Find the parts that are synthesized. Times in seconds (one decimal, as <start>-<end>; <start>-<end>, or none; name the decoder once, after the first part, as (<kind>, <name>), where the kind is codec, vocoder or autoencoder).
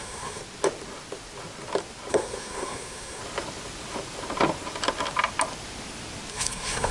0.0-0.4 (codec, SNAC); 2.1-3.2; 6.3-6.9